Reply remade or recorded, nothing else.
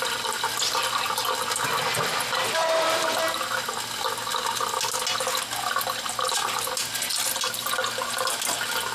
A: recorded